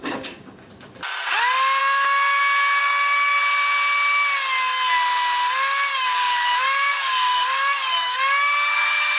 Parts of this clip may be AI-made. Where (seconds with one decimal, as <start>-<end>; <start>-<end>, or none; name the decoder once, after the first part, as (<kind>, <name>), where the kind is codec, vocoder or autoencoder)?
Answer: 0.0-0.7 (codec, DAC); 1.8-2.4; 2.8-3.4; 5.9-9.2